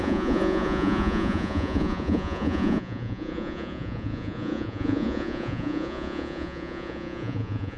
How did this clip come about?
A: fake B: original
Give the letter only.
A